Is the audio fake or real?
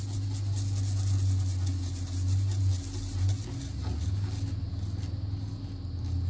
real